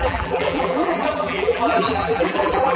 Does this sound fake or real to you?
fake